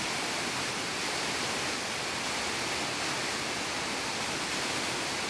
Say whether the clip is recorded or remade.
recorded